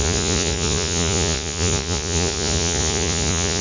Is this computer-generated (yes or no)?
yes